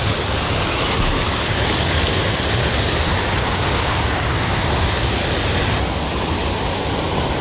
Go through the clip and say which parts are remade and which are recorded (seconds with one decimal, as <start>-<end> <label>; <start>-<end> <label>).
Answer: 0.0-3.4 recorded; 3.4-4.5 remade; 4.5-7.4 recorded